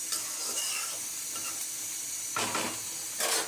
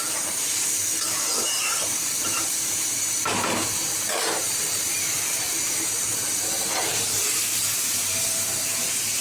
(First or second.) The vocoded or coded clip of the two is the second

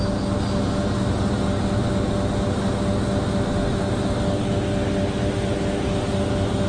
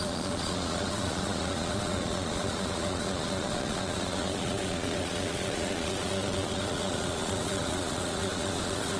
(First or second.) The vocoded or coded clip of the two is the second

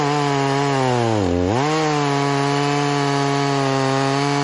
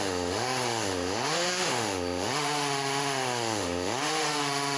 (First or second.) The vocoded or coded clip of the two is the second